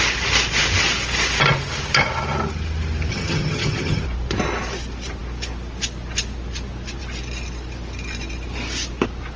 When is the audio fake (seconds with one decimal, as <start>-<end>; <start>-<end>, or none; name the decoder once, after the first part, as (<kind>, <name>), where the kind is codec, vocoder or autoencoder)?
3.1-4.0 (vocoder, HiFi-GAN)